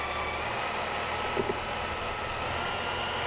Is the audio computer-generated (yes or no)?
no